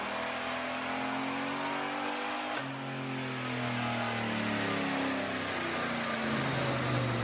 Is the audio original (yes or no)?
yes